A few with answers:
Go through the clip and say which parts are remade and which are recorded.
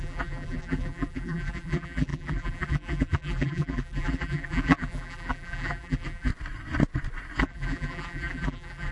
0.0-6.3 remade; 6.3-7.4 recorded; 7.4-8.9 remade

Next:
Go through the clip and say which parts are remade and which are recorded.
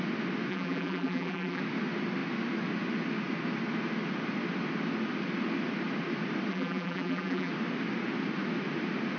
0.0-0.5 recorded; 0.5-1.6 remade; 1.6-6.5 recorded; 6.5-7.5 remade; 7.5-9.2 recorded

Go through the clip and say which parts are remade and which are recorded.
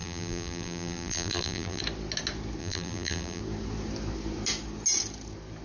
0.0-1.8 remade; 1.8-2.6 recorded; 2.6-3.4 remade; 3.4-5.6 recorded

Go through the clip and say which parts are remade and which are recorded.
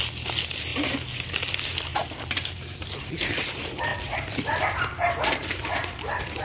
0.0-0.7 recorded; 0.7-1.4 remade; 1.4-1.9 recorded; 1.9-3.1 remade; 3.1-6.4 recorded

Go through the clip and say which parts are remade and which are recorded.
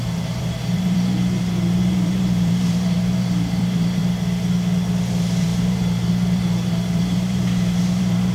0.0-4.0 remade; 4.0-5.1 recorded; 5.1-8.3 remade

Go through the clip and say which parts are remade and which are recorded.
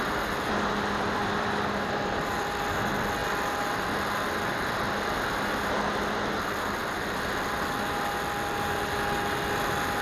0.0-1.2 recorded; 1.2-2.8 remade; 2.8-6.8 recorded; 6.8-7.5 remade; 7.5-10.0 recorded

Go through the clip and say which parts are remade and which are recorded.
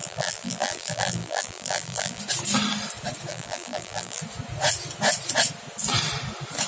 0.0-2.2 remade; 2.2-3.3 recorded; 3.3-4.2 remade; 4.2-6.7 recorded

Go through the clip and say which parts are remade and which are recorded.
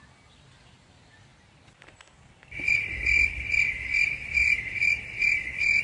0.0-5.8 recorded